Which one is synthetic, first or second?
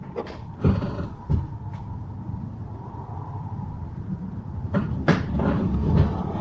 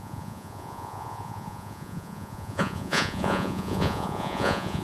second